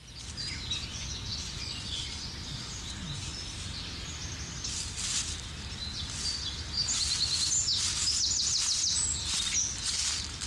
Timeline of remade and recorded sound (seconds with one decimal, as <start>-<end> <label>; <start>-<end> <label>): 0.0-0.9 recorded; 0.9-2.7 remade; 2.7-10.5 recorded